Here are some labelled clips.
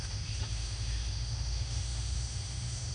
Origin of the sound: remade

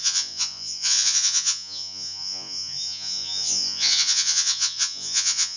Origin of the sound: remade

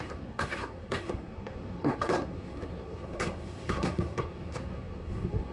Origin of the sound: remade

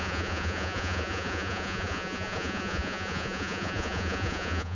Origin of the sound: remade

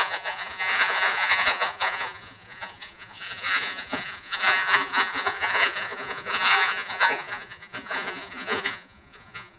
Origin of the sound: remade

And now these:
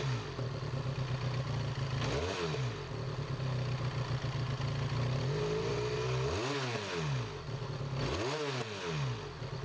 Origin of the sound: recorded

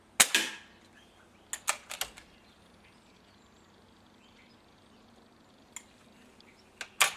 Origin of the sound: recorded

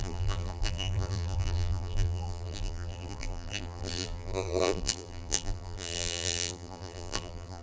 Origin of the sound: remade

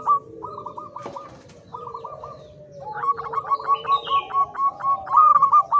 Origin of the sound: recorded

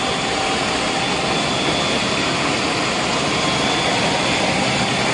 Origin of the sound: recorded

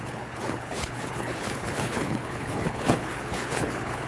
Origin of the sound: remade